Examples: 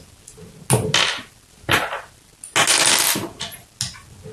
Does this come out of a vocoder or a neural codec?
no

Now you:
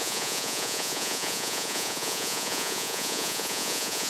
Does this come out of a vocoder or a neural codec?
yes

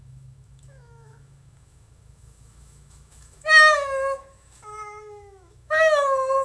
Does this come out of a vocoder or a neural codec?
yes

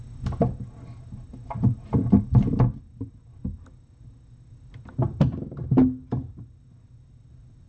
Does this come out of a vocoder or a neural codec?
no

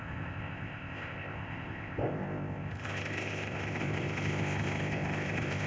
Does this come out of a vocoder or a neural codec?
yes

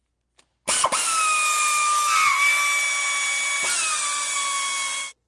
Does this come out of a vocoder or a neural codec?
no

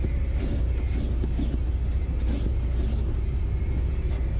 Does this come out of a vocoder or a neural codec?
no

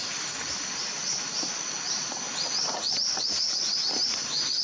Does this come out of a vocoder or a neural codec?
no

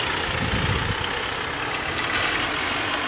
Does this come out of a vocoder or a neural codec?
no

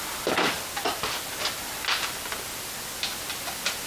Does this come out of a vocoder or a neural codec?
no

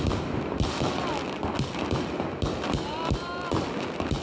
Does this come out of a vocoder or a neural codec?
no